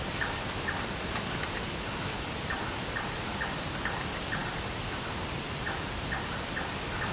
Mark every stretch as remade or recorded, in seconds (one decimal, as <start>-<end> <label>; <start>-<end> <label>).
0.0-7.1 recorded